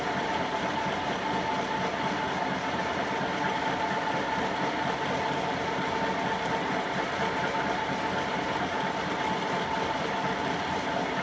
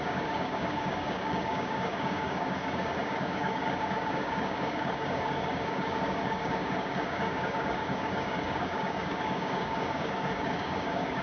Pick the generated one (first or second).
second